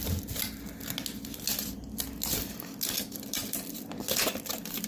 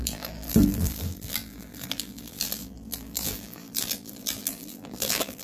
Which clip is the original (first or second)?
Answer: first